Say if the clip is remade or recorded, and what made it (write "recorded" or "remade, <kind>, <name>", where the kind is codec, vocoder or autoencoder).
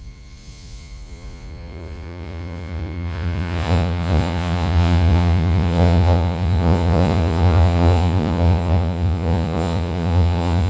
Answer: remade, vocoder, Vocos